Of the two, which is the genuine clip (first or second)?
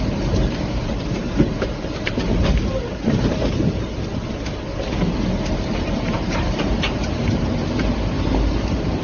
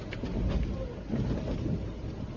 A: second